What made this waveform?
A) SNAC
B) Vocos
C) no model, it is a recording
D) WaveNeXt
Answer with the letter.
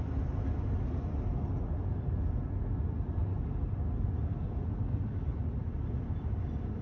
C